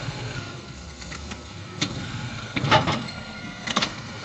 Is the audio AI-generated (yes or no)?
yes